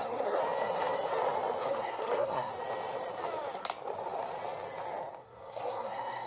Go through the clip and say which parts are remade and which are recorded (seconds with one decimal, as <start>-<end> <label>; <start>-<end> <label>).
0.0-0.4 remade; 0.4-1.7 recorded; 1.7-2.5 remade; 2.5-5.2 recorded; 5.2-6.3 remade